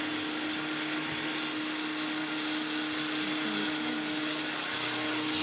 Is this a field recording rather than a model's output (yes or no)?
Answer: yes